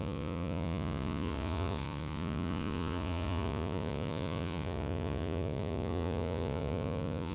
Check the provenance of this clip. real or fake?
fake